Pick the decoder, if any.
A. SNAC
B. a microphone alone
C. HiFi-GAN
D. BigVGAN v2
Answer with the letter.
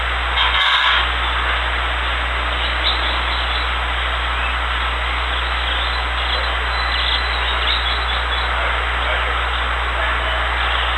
B